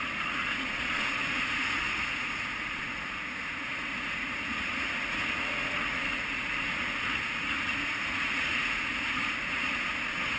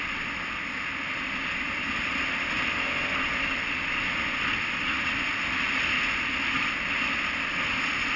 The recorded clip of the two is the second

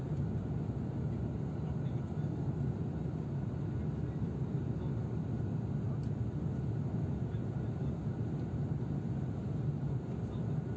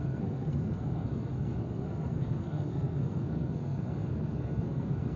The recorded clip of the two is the first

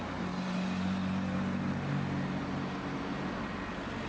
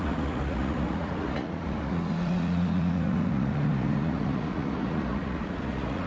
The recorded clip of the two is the first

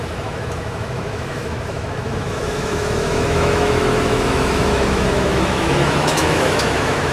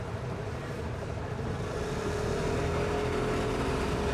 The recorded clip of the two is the second